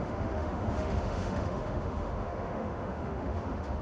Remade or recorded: remade